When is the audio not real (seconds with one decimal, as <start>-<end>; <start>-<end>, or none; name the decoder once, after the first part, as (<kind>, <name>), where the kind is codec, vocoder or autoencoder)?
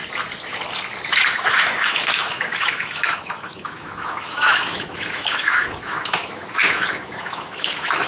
1.1-8.1 (autoencoder, DAC-VAE)